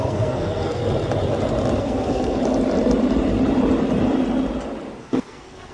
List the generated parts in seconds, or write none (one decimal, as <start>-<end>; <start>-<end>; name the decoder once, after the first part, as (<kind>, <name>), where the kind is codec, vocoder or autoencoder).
0.0-0.8 (codec, SNAC); 1.8-2.4; 5.0-5.7